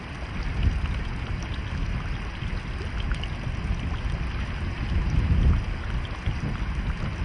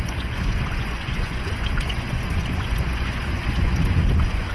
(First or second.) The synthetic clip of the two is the second